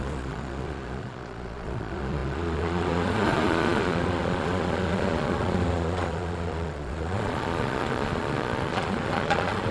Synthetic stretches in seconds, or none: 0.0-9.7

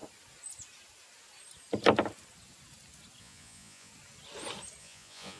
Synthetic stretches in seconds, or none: 3.2-3.9; 4.8-5.4

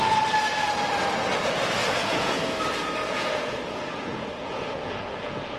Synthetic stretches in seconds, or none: 1.8-2.4; 3.0-5.6